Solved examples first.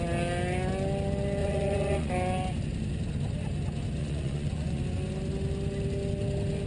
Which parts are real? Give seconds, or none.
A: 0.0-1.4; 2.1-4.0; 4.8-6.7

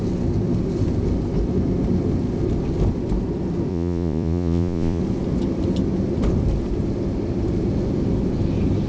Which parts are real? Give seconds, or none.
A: 0.0-3.7; 5.0-8.9

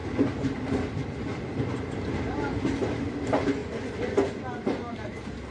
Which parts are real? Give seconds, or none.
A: 0.0-5.5